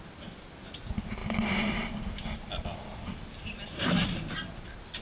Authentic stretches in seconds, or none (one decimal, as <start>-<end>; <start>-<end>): 0.0-5.0